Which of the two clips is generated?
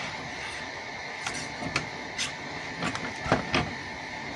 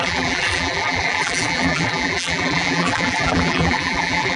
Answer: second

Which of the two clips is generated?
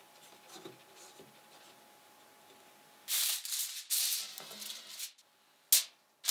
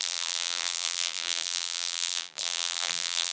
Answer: second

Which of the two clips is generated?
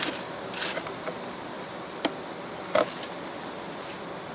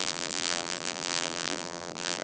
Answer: second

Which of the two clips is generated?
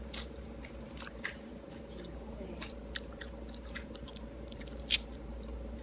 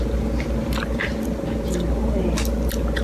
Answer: first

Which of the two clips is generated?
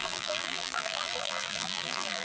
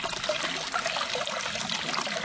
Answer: first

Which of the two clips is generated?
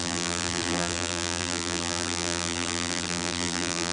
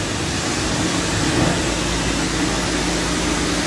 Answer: first